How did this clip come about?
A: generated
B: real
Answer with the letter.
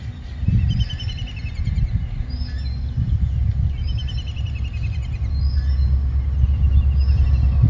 B